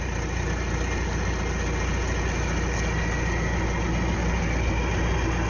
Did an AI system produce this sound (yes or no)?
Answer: no